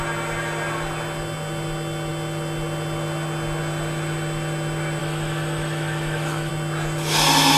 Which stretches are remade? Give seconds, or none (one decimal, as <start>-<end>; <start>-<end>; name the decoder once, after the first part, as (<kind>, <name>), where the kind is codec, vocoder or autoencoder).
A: 5.0-6.5 (autoencoder, DAC-VAE)